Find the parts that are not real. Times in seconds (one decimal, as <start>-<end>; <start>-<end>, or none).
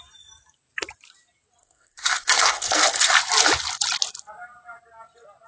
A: 1.6-3.1